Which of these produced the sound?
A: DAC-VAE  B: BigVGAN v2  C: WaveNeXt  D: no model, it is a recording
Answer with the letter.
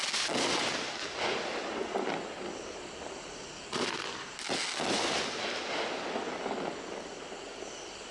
D